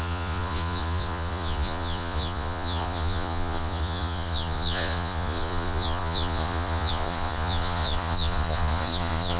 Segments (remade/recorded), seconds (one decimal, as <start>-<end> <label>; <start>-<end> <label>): 0.0-9.4 remade